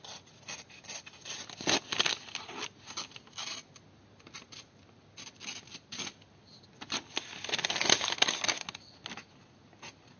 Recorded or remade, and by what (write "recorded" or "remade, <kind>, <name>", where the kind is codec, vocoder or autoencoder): recorded